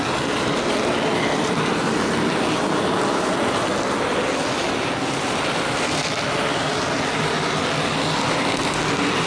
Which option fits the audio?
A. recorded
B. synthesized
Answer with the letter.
A